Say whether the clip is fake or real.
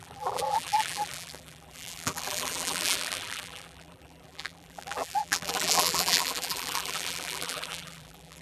fake